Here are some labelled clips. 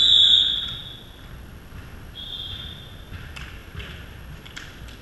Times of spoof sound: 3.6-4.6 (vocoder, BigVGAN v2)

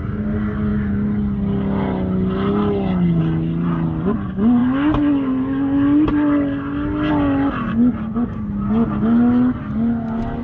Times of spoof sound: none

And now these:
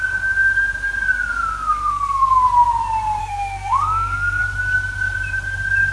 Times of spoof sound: 1.8-2.4 (codec, SNAC); 3.2-4.4

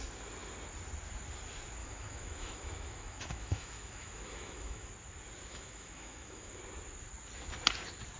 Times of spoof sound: 1.8-4.9 (autoencoder, DAC-VAE); 5.5-6.6

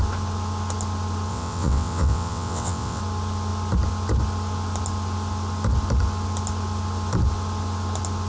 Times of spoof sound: 1.3-3.0 (vocoder, WaveNeXt)